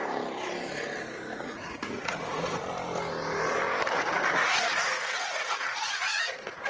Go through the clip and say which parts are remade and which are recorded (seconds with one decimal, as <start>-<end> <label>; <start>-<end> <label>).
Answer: 0.0-1.3 recorded; 1.3-2.6 remade; 2.6-4.4 recorded; 4.4-6.7 remade